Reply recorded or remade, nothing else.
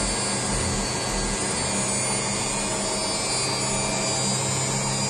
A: recorded